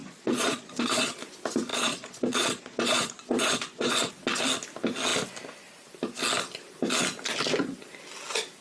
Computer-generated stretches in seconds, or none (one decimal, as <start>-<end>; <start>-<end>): 0.0-1.1; 1.7-4.1